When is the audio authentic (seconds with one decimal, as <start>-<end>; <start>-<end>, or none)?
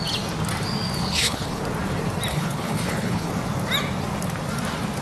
0.0-1.0; 1.6-2.3; 3.3-5.0